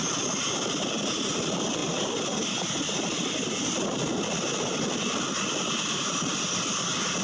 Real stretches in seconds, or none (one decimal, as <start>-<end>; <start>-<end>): 0.0-7.2